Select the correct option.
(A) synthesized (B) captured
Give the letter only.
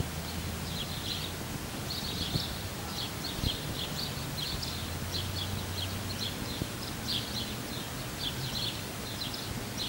B